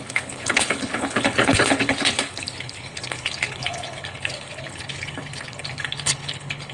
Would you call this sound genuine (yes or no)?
no